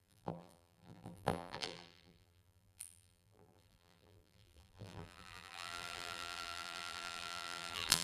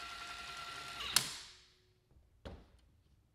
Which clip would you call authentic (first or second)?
second